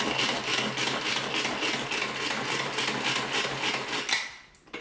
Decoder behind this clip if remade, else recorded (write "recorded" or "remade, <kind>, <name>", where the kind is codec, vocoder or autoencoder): recorded